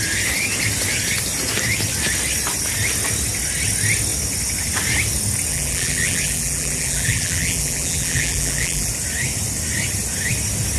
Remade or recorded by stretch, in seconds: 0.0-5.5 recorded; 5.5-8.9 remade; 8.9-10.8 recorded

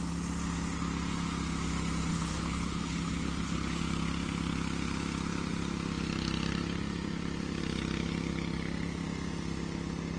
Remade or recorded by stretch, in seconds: 0.0-2.1 recorded; 2.1-3.8 remade; 3.8-10.2 recorded

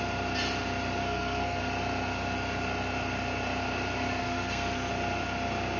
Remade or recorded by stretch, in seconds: 0.0-1.0 recorded; 1.0-1.6 remade; 1.6-4.2 recorded; 4.2-4.9 remade; 4.9-5.8 recorded

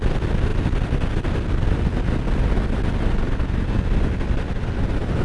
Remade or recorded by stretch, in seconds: 0.0-5.2 recorded

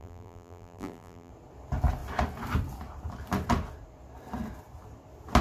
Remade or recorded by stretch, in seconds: 0.0-1.3 remade; 1.3-5.4 recorded